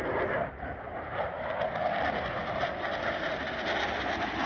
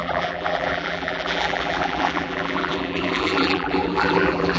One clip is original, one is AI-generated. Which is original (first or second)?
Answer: first